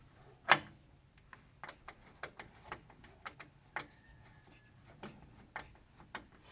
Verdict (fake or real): real